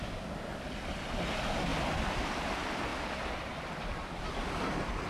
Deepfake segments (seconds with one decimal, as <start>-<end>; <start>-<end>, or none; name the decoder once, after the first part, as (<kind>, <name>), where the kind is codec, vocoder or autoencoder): none